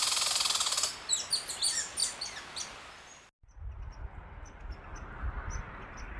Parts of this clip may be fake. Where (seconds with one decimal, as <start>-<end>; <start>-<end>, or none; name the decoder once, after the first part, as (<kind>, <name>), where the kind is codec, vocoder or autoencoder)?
none